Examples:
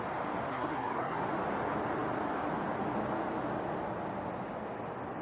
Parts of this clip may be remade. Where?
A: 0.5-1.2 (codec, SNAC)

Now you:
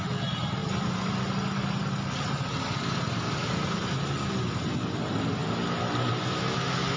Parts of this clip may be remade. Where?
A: none

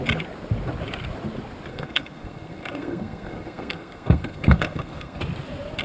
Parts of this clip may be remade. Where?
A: 1.7-5.2 (codec, SNAC)

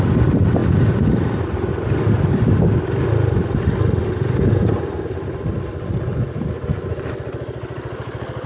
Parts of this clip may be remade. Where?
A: none

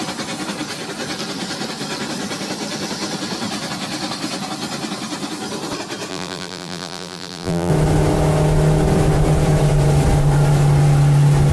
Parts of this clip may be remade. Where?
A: 6.1-7.7 (vocoder, BigVGAN v2)

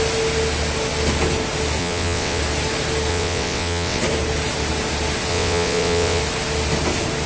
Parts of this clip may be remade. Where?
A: 1.8-2.4 (vocoder, WaveNeXt); 3.1-4.0; 5.3-6.2

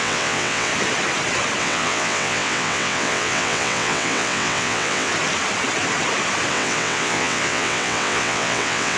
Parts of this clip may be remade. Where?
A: 0.0-0.7 (vocoder, WaveNeXt); 1.6-5.1; 6.5-9.0

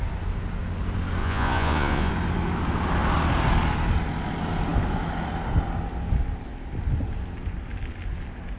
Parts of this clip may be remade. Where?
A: 1.2-2.1 (vocoder, Vocos)